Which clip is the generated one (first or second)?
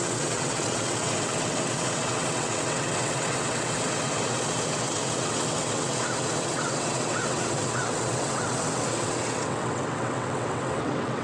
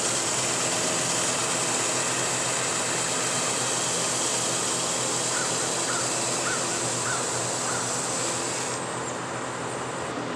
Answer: first